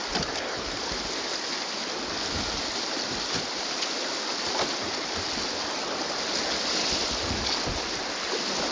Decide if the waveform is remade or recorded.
recorded